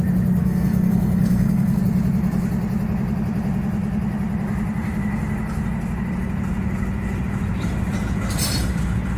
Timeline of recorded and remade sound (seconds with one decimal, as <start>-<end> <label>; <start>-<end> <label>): 0.0-0.4 recorded; 0.4-1.8 remade; 1.8-9.2 recorded